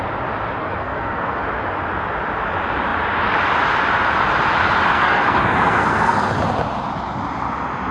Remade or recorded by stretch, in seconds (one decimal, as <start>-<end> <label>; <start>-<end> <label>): 0.0-0.6 recorded; 0.6-1.4 remade; 1.4-4.9 recorded; 4.9-6.3 remade; 6.3-7.9 recorded